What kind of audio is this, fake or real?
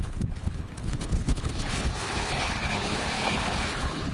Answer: fake